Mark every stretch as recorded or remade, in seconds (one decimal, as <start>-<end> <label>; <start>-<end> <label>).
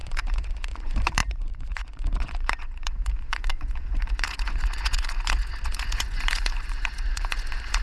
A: 0.0-7.8 remade